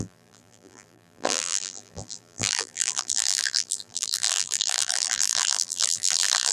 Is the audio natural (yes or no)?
no